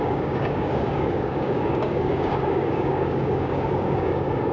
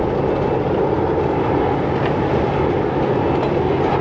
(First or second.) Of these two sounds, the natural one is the second